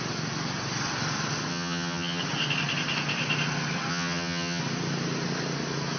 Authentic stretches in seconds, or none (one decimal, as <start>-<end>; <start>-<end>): 0.0-1.5; 2.2-3.9; 4.6-6.0